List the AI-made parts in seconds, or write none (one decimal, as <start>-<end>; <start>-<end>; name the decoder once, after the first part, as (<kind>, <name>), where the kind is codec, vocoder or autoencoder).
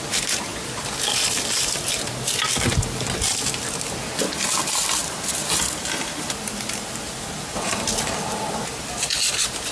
5.0-8.7 (vocoder, BigVGAN v2)